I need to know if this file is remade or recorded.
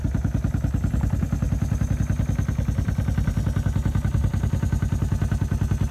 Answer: recorded